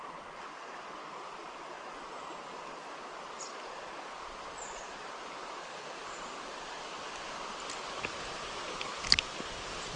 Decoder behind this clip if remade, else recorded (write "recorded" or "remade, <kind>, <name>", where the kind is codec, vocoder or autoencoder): recorded